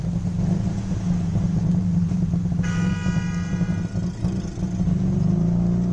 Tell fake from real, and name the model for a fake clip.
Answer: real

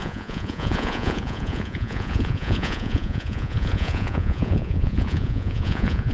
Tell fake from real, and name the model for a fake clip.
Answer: fake, vocoder, Vocos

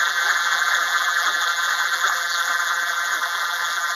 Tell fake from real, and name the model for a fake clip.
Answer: fake, vocoder, BigVGAN v2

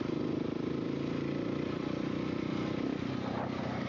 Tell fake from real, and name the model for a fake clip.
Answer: real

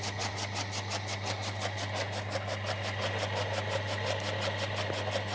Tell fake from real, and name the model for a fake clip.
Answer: real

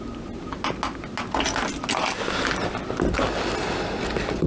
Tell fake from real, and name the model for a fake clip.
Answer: real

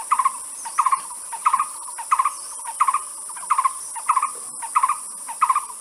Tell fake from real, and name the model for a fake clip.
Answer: real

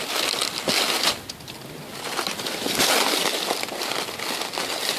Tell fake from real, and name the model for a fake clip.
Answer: real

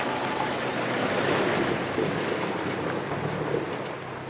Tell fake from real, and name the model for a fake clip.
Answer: real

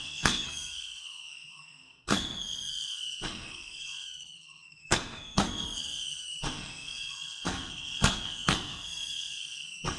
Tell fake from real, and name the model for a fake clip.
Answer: fake, codec, SNAC